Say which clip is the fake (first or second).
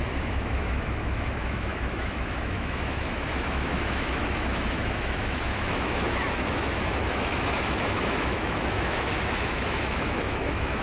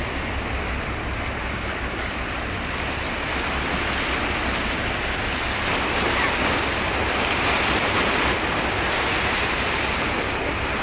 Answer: first